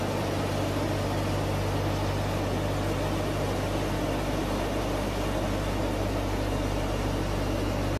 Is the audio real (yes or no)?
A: yes